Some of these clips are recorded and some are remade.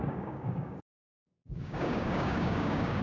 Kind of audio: remade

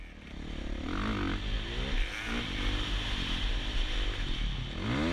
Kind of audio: recorded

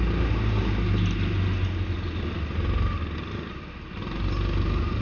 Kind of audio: recorded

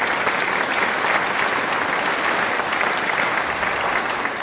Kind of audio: recorded